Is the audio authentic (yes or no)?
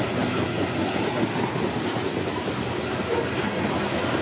yes